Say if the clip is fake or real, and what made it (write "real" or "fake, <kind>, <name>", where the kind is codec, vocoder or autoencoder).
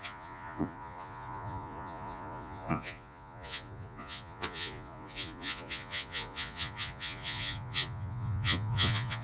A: fake, vocoder, Vocos